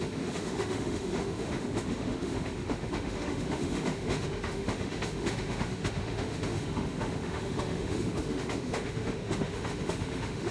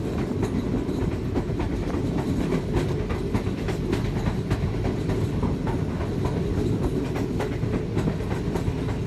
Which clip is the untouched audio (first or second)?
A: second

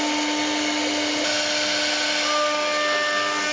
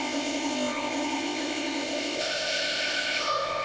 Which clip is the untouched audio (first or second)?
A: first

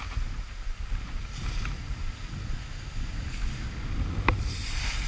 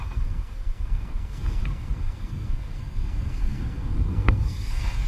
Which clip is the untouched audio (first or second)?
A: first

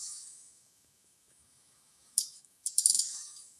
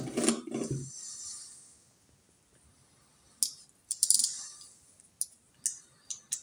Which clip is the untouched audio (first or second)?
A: second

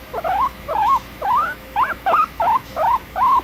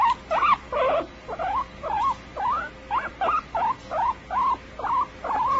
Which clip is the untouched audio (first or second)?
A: second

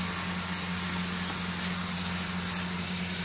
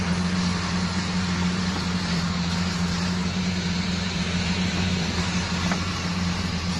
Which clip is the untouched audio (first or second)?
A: first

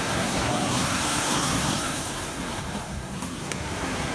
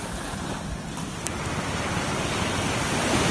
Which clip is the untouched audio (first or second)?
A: second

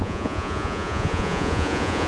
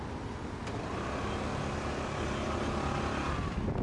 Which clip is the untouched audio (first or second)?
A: second